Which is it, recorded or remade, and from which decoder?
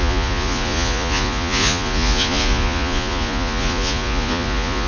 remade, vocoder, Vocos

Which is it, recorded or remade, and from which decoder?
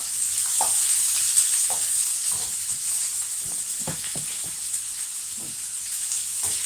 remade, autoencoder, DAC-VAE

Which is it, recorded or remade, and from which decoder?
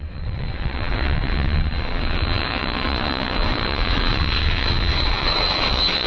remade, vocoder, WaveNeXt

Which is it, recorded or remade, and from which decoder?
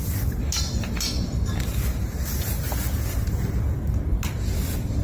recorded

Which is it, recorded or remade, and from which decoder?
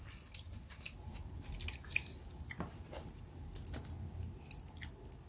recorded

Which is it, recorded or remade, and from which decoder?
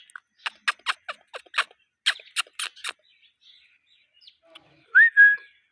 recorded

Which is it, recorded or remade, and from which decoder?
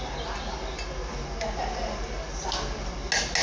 recorded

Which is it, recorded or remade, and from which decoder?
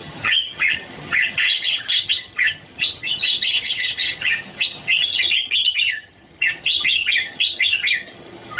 remade, vocoder, HiFi-GAN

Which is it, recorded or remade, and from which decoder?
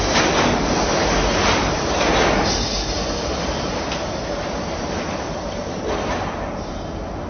recorded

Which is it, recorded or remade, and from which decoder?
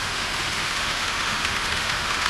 remade, autoencoder, DAC-VAE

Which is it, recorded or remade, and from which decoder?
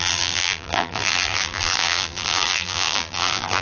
remade, vocoder, BigVGAN v2